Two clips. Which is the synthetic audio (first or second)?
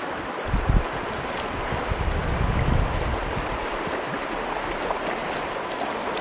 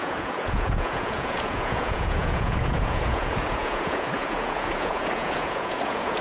second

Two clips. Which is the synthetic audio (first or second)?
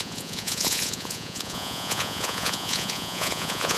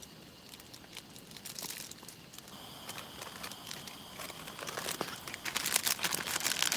first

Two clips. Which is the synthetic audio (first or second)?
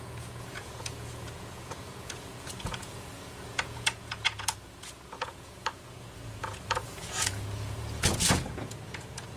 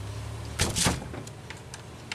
first